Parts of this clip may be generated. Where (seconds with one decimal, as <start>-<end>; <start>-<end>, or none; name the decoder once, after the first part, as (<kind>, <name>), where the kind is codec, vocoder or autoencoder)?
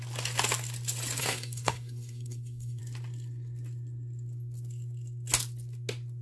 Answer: 1.2-2.8 (codec, SNAC)